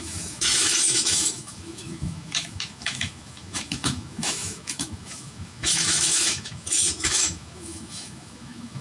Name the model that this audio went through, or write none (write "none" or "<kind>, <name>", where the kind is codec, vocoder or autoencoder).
autoencoder, DAC-VAE